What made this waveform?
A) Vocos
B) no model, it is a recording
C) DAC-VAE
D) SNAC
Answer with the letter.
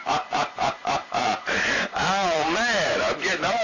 A